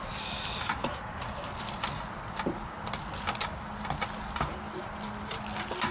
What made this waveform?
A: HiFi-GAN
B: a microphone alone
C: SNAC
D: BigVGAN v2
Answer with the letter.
B